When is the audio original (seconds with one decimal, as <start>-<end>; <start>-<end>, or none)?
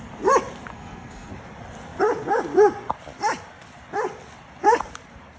0.0-0.7; 1.3-5.4